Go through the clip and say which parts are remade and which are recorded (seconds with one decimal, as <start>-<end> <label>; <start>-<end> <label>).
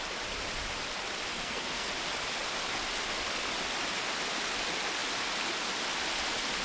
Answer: 0.0-1.3 recorded; 1.3-1.9 remade; 1.9-6.6 recorded